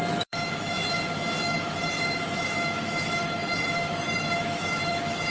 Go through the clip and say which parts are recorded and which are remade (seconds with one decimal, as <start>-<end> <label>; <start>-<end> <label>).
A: 0.0-0.9 remade; 0.9-1.4 recorded; 1.4-5.3 remade